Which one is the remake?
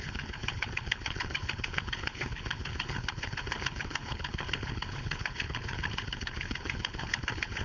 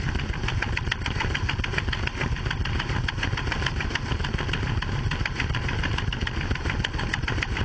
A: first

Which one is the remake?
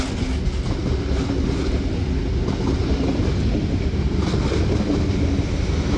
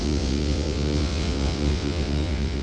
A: second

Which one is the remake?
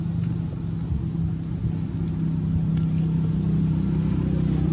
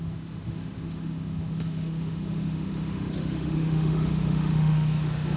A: second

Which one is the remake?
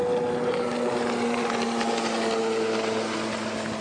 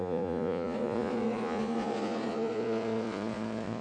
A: second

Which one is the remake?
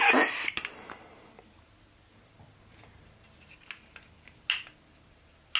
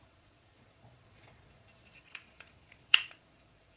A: second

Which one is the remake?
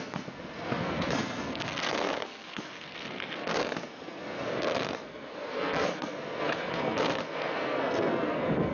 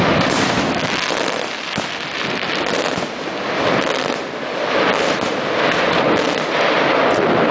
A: first